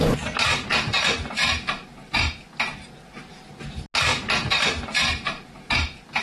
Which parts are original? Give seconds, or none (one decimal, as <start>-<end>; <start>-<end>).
0.0-0.7; 2.1-4.1; 5.7-6.2